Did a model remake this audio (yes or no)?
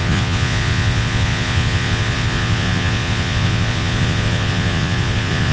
yes